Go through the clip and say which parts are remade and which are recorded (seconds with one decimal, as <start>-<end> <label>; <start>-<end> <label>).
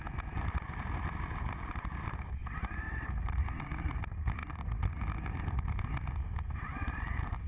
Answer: 0.0-7.5 recorded